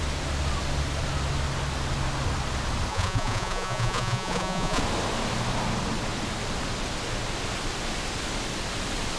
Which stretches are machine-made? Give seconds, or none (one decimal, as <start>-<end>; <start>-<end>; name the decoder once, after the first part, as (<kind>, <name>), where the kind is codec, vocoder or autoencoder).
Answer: 2.9-4.8 (vocoder, Vocos)